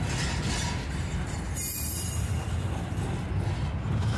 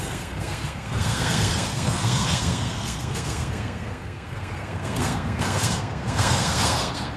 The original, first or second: first